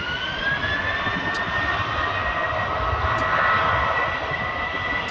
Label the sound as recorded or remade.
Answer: recorded